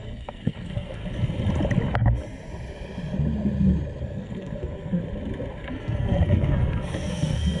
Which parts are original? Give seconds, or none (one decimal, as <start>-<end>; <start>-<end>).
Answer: 1.0-4.0; 5.0-5.6